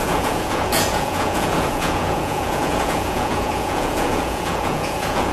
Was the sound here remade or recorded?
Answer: remade